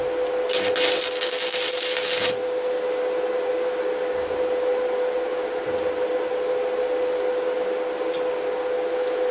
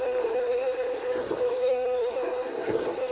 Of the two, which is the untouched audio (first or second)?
first